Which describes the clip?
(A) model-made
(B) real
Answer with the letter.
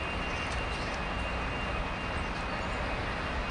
B